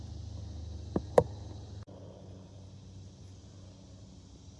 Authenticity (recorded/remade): recorded